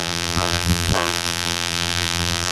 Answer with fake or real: fake